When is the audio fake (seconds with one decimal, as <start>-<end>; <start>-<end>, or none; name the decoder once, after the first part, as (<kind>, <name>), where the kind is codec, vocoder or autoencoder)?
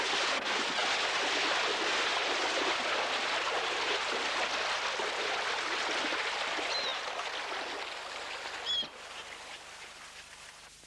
none